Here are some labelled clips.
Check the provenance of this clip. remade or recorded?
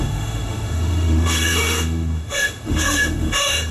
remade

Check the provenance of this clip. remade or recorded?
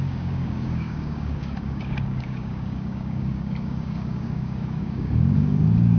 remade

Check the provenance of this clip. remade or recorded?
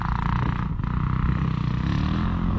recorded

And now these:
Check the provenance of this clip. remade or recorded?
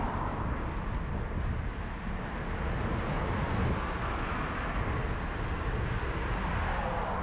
recorded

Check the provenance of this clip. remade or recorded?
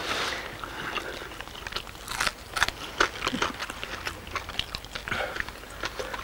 recorded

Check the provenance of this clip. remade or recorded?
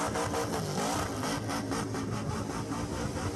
recorded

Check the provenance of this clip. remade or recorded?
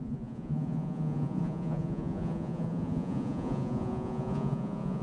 remade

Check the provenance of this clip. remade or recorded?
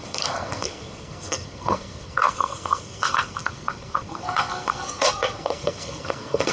remade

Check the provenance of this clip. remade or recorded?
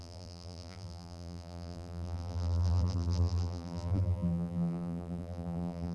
remade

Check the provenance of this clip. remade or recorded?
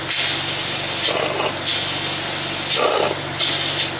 recorded